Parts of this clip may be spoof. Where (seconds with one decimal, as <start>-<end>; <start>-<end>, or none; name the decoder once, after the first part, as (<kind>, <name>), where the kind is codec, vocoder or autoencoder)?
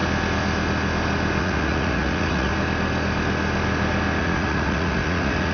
1.4-2.5 (vocoder, Vocos); 4.2-5.5